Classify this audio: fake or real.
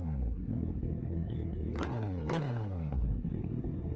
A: fake